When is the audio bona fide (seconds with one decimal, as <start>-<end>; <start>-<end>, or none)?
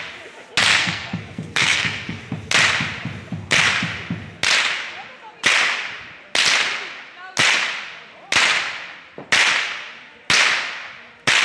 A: 0.0-0.7; 2.2-11.4